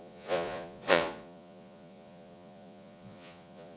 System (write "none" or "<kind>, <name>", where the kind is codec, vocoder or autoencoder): vocoder, Vocos